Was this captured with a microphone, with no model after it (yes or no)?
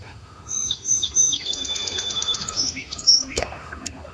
no